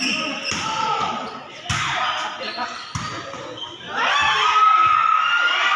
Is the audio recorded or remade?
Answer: recorded